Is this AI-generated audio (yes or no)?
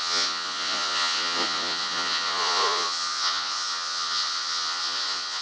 yes